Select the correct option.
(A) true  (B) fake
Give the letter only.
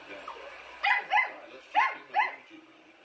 A